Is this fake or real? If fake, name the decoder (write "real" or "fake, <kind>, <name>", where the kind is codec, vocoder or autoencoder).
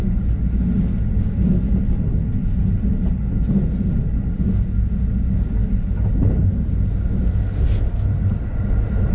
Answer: real